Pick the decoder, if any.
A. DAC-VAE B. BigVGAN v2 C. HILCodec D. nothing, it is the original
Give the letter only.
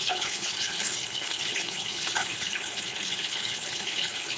C